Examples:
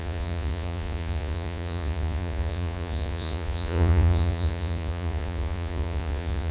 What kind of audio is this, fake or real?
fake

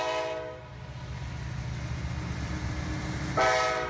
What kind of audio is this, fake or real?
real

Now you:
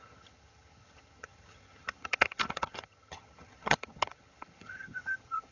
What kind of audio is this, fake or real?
fake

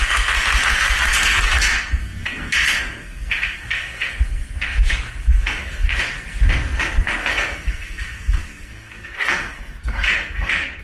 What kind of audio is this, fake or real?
fake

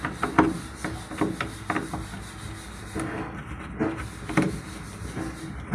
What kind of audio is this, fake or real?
real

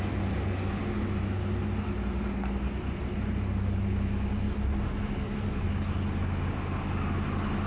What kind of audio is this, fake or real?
real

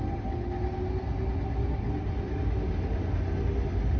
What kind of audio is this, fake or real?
real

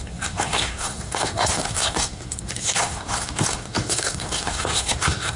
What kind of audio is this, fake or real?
fake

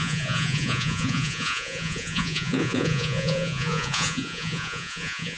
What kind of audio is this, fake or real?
fake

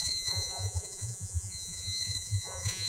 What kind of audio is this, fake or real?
fake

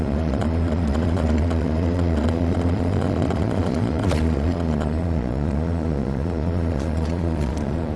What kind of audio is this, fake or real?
fake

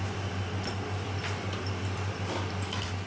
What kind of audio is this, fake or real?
real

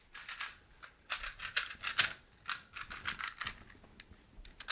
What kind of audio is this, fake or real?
real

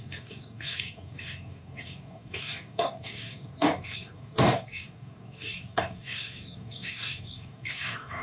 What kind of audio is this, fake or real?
fake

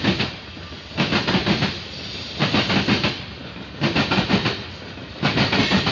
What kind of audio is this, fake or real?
real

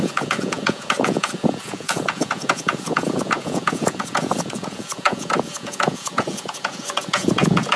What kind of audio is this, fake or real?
fake